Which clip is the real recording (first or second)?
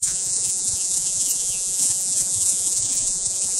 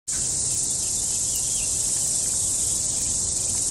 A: second